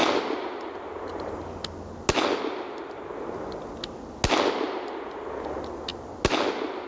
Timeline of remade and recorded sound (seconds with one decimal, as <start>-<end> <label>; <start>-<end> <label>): 0.0-6.9 recorded